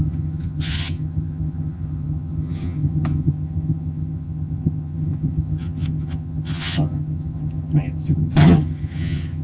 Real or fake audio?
fake